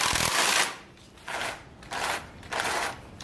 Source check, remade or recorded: remade